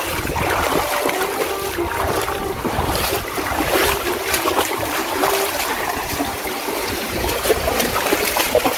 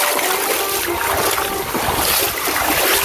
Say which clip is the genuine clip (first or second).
second